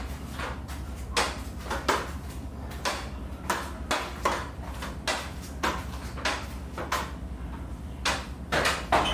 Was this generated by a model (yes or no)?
no